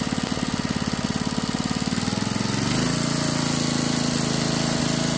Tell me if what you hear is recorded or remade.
recorded